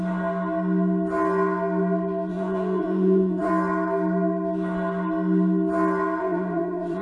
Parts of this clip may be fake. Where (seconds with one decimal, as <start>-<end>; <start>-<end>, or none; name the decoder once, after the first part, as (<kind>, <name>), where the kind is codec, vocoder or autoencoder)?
2.3-3.5 (vocoder, Vocos); 6.2-7.0